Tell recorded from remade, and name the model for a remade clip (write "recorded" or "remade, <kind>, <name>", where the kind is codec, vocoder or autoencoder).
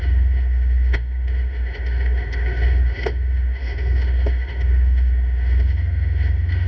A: remade, autoencoder, DAC-VAE